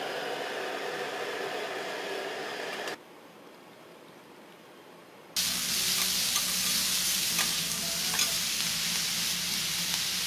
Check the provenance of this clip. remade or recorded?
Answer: recorded